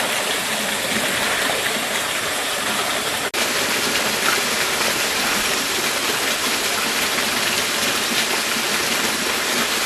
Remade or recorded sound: recorded